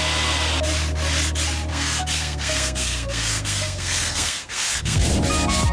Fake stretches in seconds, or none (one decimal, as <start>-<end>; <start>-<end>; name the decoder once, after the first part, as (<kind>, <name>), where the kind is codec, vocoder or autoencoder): 1.7-5.1 (codec, SNAC)